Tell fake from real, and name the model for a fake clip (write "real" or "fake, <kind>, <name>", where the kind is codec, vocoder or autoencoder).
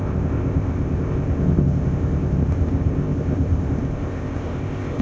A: fake, codec, ZipCodec